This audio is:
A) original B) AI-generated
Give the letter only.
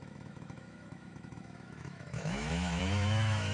B